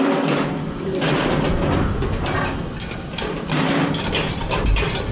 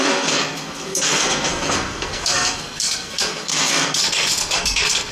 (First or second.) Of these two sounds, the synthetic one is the second